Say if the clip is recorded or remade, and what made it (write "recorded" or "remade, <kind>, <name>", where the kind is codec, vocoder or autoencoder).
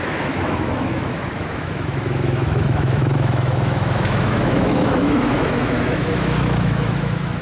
remade, autoencoder, DAC-VAE